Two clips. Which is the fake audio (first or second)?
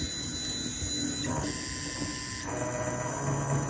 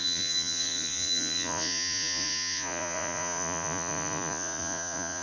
second